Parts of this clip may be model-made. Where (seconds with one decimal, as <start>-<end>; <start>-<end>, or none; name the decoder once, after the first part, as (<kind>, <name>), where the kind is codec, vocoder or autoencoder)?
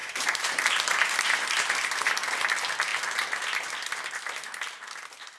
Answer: 0.0-1.1 (vocoder, BigVGAN v2)